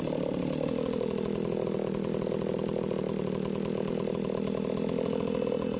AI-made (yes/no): no